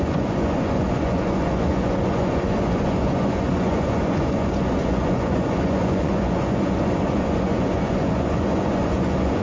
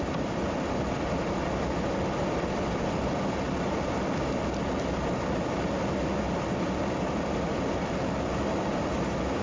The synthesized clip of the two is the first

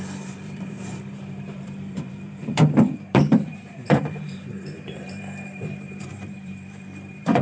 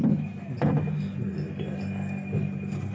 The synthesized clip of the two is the first